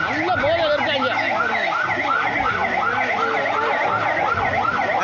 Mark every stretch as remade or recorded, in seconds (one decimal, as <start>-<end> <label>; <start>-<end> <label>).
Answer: 0.0-5.0 recorded